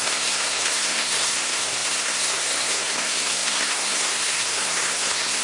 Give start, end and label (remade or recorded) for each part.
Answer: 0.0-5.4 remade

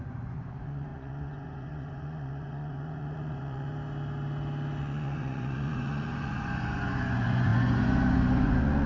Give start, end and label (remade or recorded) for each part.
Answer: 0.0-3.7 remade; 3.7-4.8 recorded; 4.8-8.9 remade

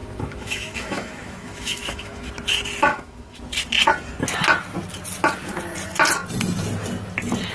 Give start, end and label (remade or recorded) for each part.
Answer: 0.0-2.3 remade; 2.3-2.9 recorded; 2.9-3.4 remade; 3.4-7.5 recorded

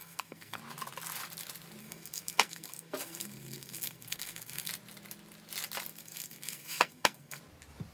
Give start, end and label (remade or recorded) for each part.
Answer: 0.0-0.6 remade; 0.6-1.8 recorded; 1.8-4.7 remade; 4.7-5.9 recorded; 5.9-7.4 remade; 7.4-7.9 recorded

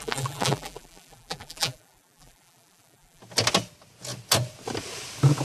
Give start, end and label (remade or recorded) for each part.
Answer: 0.0-3.2 remade; 3.2-5.4 recorded